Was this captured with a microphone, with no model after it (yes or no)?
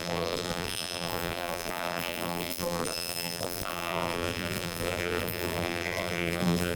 no